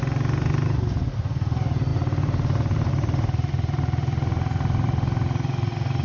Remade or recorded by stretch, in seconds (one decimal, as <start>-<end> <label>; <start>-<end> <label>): 0.0-6.0 recorded